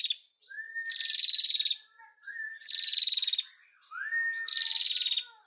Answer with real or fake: real